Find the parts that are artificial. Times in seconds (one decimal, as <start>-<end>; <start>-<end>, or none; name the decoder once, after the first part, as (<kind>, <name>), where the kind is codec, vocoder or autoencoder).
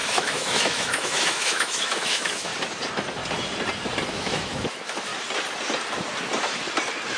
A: 0.0-2.5 (autoencoder, DAC-VAE); 4.1-5.1